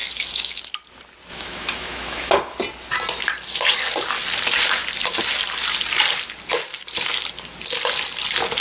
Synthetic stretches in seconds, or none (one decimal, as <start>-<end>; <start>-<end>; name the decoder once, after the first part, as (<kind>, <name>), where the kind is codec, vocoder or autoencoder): 0.0-0.6 (autoencoder, DAC-VAE); 1.3-2.3